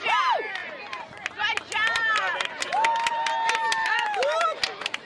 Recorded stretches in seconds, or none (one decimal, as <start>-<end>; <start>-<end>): 0.0-3.8; 4.4-5.1